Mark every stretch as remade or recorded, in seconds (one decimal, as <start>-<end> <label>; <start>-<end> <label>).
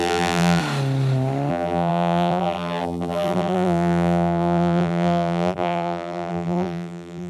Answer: 0.0-0.6 remade; 0.6-1.5 recorded; 1.5-7.3 remade